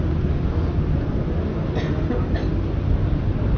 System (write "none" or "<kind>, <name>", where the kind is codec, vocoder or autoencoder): none